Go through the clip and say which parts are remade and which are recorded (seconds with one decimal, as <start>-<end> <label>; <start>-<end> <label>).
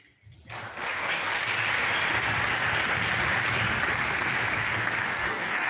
0.0-0.9 recorded; 0.9-1.4 remade; 1.4-5.1 recorded; 5.1-5.7 remade